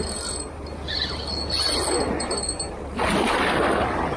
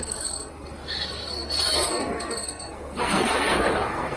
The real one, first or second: first